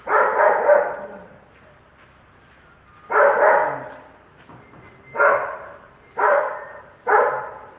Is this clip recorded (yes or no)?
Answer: yes